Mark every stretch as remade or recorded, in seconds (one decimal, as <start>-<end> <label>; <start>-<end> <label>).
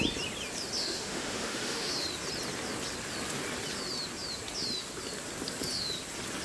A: 0.0-0.8 recorded; 0.8-1.9 remade; 1.9-6.4 recorded